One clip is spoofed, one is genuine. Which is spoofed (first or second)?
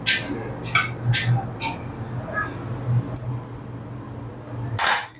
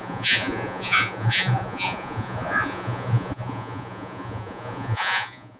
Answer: second